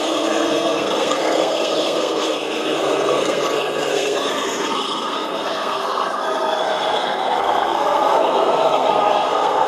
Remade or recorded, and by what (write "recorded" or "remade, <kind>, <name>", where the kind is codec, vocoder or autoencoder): remade, codec, SNAC